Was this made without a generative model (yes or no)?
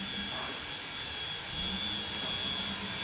yes